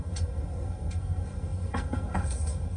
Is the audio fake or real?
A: fake